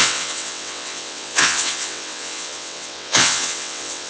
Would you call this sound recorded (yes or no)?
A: no